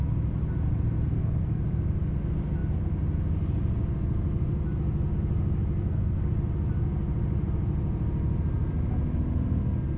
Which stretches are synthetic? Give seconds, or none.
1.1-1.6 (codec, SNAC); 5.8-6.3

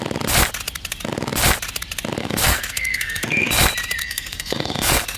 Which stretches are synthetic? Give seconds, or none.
2.2-3.5 (codec, SNAC); 4.0-5.2

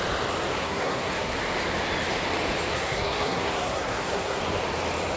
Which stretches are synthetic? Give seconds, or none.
0.6-1.4 (codec, SNAC); 2.7-4.4

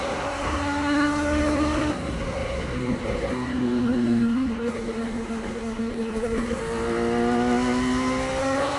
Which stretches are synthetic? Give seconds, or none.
0.0-6.6 (codec, SNAC); 8.4-8.8

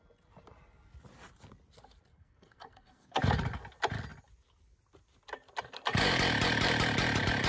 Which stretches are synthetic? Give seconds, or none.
2.1-3.2 (codec, SNAC)

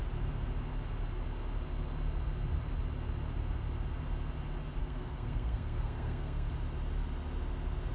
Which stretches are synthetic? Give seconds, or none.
4.8-6.5 (codec, SNAC)

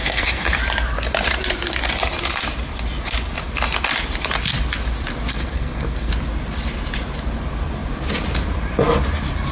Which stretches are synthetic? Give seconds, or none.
0.0-0.6 (codec, SNAC); 5.3-6.1

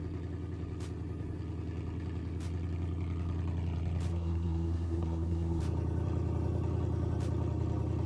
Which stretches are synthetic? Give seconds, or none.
4.1-5.6 (codec, SNAC)